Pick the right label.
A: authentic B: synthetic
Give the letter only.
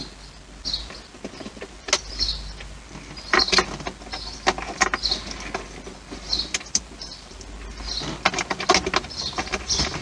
A